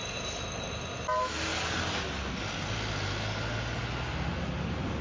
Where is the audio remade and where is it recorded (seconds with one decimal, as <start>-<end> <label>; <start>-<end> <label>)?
0.0-5.0 recorded